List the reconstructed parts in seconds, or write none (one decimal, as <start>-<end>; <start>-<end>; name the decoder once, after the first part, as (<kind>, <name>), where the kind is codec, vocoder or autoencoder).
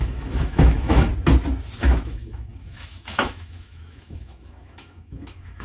0.0-1.1 (autoencoder, DAC-VAE); 1.8-5.6